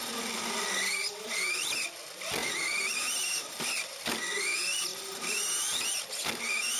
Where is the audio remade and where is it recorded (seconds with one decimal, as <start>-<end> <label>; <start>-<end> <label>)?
0.0-0.9 recorded; 0.9-1.7 remade; 1.7-2.4 recorded; 2.4-4.0 remade; 4.0-6.8 recorded

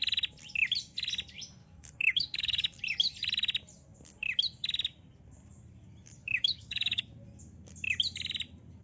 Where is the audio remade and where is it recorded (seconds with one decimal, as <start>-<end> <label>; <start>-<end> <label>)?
0.0-1.6 recorded; 1.6-2.8 remade; 2.8-6.2 recorded; 6.2-7.0 remade; 7.0-8.8 recorded

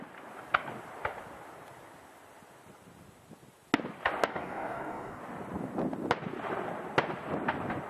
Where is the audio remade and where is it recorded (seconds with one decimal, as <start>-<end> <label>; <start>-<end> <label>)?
0.0-4.3 recorded; 4.3-5.2 remade; 5.2-7.9 recorded

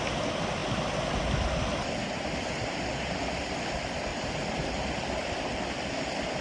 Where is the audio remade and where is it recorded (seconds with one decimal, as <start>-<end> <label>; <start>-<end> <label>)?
0.0-4.1 recorded; 4.1-6.4 remade